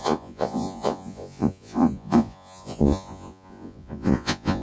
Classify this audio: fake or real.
fake